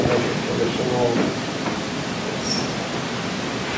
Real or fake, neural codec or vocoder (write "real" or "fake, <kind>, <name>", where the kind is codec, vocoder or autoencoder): fake, vocoder, BigVGAN v2